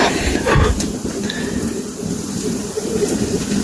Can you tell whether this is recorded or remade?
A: remade